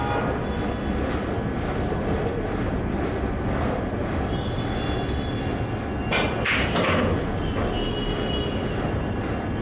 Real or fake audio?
real